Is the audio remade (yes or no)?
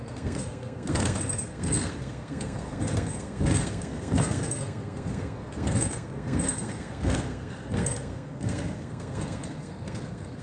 yes